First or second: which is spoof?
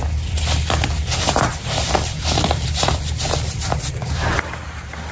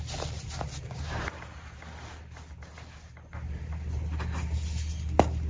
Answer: first